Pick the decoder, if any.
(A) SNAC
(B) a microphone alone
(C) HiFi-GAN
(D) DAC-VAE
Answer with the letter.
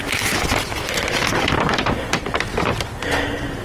B